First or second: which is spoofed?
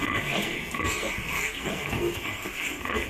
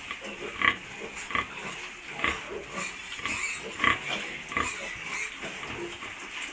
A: first